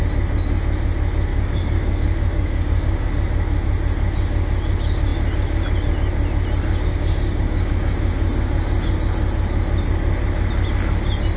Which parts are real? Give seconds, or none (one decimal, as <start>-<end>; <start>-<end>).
0.0-1.3; 3.1-6.9; 7.7-11.4